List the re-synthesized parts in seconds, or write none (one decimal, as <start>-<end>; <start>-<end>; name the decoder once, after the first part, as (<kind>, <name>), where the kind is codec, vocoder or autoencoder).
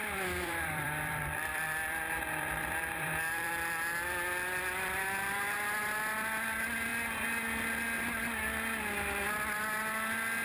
0.0-3.5 (vocoder, BigVGAN v2)